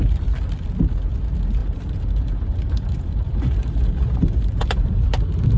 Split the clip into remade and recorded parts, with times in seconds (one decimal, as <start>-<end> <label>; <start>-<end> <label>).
0.0-1.6 recorded; 1.6-5.0 remade; 5.0-5.6 recorded